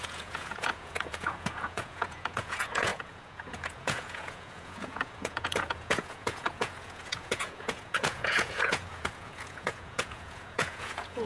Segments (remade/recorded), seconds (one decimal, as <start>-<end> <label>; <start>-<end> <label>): 0.0-11.3 remade

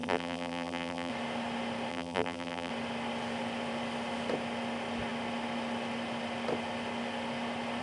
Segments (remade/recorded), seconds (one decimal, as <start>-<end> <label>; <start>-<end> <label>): 0.0-1.1 remade; 1.1-1.9 recorded; 1.9-2.7 remade; 2.7-7.8 recorded

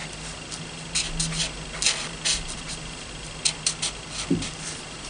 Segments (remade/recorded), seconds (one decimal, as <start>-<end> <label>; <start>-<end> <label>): 0.0-5.1 recorded

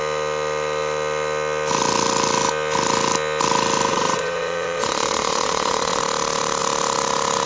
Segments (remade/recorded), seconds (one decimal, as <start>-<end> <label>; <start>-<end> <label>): 0.0-3.9 recorded; 3.9-6.0 remade; 6.0-7.5 recorded

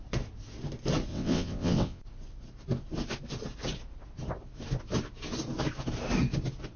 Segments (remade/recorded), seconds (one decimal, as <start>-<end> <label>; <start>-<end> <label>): 0.0-1.1 recorded; 1.1-2.0 remade; 2.0-6.8 recorded